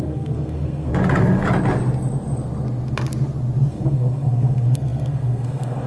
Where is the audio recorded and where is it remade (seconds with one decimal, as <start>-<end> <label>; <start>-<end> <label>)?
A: 0.0-0.9 remade; 0.9-3.7 recorded; 3.7-5.9 remade